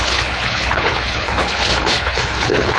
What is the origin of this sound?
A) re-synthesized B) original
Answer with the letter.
A